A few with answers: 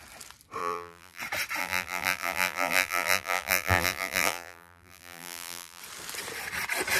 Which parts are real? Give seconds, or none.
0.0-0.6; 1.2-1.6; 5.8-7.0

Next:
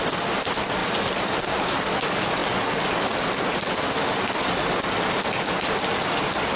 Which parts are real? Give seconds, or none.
0.0-0.8; 1.6-6.6

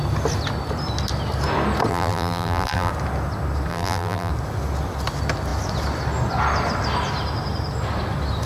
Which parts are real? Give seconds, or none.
0.0-1.9; 2.9-3.7; 4.3-8.5

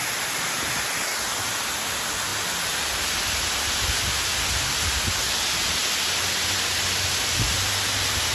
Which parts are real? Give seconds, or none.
0.0-8.3

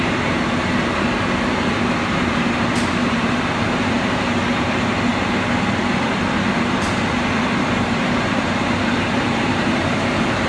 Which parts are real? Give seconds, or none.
5.1-7.9